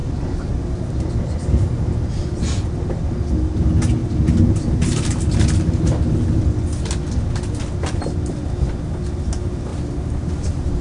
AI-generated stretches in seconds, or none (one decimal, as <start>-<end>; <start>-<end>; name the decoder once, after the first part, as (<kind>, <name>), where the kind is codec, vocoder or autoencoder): 0.0-0.5 (vocoder, BigVGAN v2); 4.0-5.8; 9.7-10.8